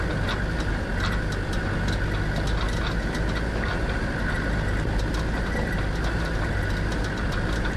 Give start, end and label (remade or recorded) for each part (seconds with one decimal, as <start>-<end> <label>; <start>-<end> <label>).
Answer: 0.0-7.8 recorded